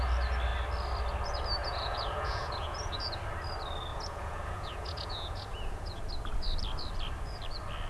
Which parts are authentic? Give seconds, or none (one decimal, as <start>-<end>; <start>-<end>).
0.0-1.6; 3.2-3.9; 6.0-7.9